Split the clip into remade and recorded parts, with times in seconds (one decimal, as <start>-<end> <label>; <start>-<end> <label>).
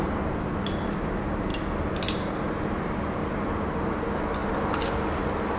0.0-3.2 recorded; 3.2-3.7 remade; 3.7-5.6 recorded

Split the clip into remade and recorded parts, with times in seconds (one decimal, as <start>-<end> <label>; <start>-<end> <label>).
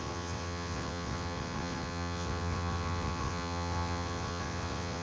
0.0-5.0 remade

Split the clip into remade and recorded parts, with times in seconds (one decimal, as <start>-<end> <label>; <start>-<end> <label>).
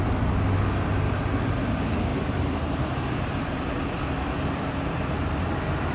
0.0-5.9 recorded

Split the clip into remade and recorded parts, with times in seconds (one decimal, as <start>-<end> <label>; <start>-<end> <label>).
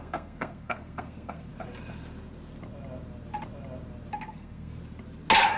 0.0-1.5 remade; 1.5-4.1 recorded; 4.1-4.8 remade; 4.8-5.6 recorded